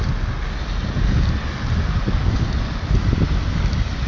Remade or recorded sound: recorded